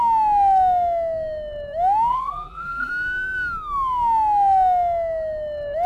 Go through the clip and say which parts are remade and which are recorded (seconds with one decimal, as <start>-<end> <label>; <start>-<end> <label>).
0.0-2.1 recorded; 2.1-2.9 remade; 2.9-5.9 recorded